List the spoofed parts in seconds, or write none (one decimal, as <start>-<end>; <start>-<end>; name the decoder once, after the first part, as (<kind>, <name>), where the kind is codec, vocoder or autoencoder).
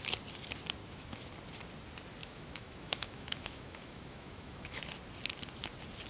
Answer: 0.8-1.3 (autoencoder, DAC-VAE); 2.2-4.8